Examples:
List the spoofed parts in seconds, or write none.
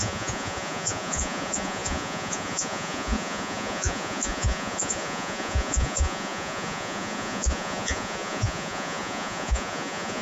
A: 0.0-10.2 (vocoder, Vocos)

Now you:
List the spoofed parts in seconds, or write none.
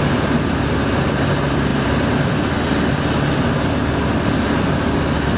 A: none